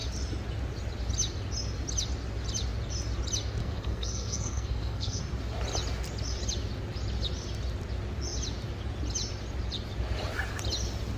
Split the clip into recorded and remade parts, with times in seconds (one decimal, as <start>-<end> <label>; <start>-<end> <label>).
0.0-3.6 recorded; 3.6-5.2 remade; 5.2-11.2 recorded